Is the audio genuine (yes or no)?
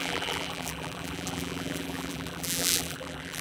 no